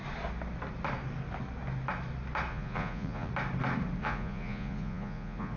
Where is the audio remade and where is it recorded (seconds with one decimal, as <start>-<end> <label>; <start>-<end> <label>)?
0.0-2.5 recorded; 2.5-3.3 remade; 3.3-4.0 recorded; 4.0-5.6 remade